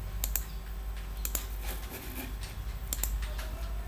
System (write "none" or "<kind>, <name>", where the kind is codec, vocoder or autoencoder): none